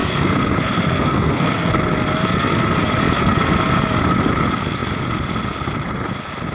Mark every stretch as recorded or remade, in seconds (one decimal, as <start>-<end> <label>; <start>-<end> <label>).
0.0-1.7 remade; 1.7-6.5 recorded